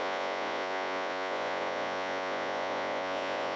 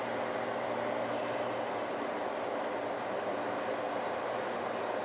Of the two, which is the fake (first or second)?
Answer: first